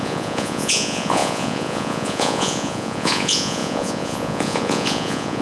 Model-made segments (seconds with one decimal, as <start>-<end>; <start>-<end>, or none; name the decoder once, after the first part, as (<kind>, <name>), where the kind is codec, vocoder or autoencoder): 0.0-5.4 (vocoder, Vocos)